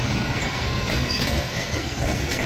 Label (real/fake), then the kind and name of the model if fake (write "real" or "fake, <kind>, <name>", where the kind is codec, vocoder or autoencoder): fake, codec, SNAC